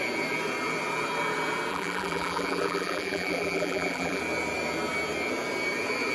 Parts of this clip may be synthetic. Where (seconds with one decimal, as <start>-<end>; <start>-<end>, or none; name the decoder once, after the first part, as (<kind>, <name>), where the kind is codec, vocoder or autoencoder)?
1.7-4.2 (vocoder, BigVGAN v2)